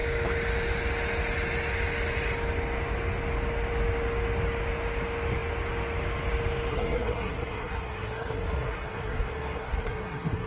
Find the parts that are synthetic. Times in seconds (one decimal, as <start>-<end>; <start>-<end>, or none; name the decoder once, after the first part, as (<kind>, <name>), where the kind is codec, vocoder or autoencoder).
6.7-10.5 (codec, SNAC)